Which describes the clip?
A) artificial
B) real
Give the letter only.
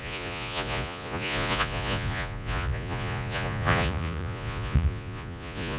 A